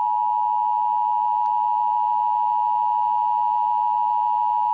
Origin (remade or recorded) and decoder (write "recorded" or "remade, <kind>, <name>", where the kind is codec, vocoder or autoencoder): recorded